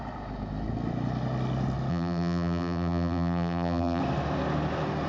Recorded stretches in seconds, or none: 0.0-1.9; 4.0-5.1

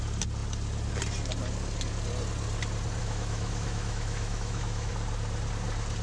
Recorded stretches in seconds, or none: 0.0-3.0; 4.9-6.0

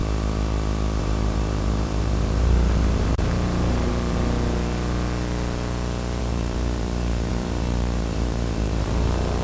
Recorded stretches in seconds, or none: 0.0-1.0; 3.9-6.2

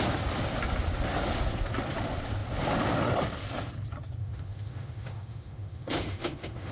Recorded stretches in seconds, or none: 0.0-4.2